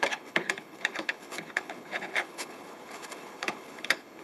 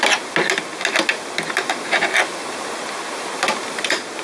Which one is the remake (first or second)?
first